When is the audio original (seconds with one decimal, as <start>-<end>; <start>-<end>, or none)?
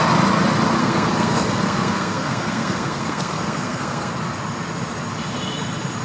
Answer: 0.0-0.8; 4.1-6.0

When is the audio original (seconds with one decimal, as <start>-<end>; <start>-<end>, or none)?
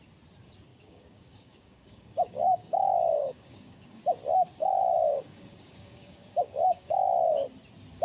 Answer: 0.0-0.7; 4.0-4.6; 7.3-8.0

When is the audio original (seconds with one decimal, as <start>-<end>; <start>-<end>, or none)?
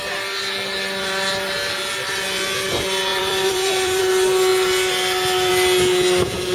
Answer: 0.0-3.1; 4.0-6.5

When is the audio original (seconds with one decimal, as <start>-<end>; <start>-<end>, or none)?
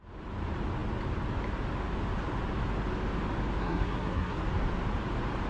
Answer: 0.0-3.6; 4.4-5.5